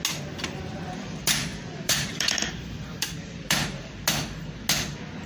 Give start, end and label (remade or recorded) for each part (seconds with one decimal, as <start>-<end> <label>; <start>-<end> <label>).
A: 0.0-1.5 recorded; 1.5-3.9 remade; 3.9-5.3 recorded